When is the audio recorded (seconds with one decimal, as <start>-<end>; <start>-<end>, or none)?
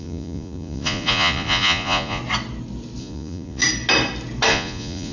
2.2-3.0; 3.6-4.5